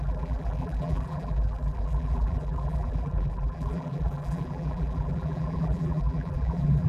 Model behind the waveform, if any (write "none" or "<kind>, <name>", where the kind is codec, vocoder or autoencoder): vocoder, BigVGAN v2